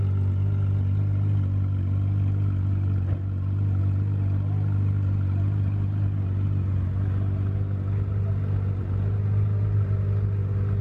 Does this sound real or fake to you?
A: real